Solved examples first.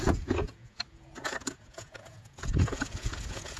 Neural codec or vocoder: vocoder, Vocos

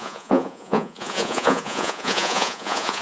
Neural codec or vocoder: vocoder, Vocos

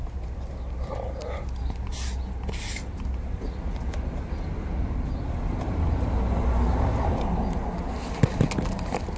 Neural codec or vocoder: none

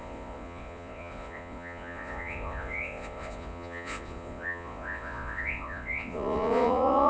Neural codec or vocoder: vocoder, Vocos